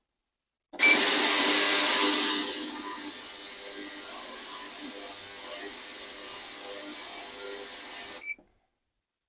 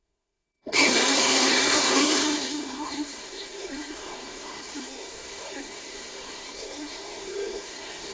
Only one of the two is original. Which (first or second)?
first